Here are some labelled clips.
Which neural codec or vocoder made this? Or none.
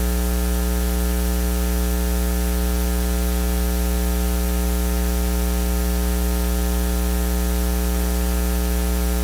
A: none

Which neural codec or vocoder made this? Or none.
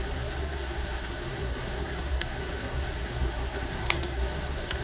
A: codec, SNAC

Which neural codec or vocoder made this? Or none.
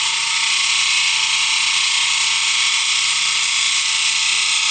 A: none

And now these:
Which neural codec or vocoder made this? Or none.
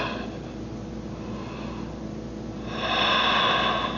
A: none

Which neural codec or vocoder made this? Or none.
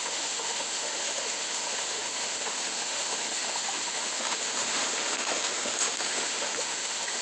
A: autoencoder, DAC-VAE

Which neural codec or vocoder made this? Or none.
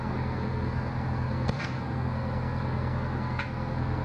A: codec, SNAC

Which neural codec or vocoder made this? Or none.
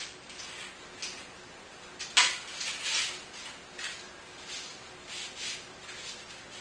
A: none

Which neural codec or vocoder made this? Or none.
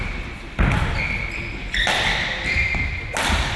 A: none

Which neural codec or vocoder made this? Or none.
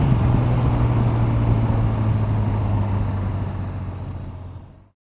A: none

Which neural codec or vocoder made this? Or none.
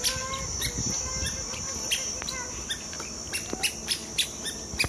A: none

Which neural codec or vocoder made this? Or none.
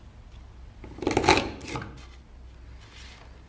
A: none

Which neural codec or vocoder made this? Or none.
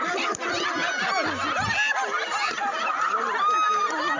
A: none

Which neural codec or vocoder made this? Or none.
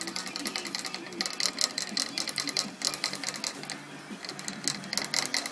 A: none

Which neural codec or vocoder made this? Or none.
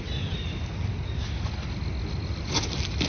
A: none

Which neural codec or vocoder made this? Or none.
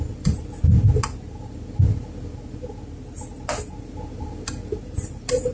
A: none